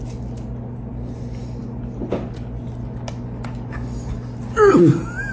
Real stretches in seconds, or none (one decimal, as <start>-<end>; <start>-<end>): 0.0-5.3